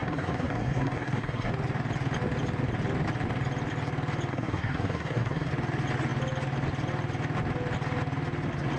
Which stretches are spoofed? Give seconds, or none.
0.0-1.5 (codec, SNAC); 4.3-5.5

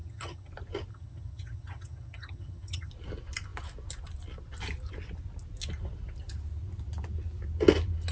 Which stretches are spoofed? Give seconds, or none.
0.0-0.5 (vocoder, HiFi-GAN); 0.9-2.9

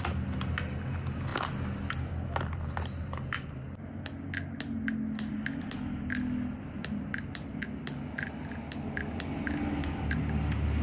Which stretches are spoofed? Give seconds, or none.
none

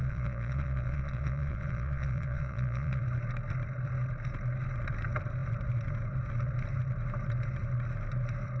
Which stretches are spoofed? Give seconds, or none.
0.0-3.0 (vocoder, Vocos)

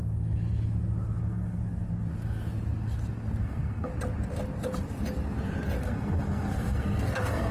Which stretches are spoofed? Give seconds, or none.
1.2-1.6 (codec, SNAC); 3.4-3.9; 5.8-7.5

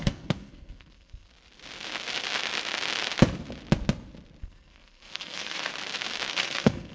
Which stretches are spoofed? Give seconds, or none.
0.0-1.3 (codec, SNAC); 4.4-5.7; 6.3-6.9

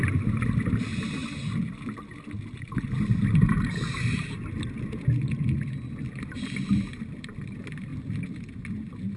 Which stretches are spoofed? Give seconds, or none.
none

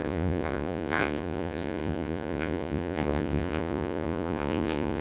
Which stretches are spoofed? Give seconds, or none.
0.0-5.0 (vocoder, Vocos)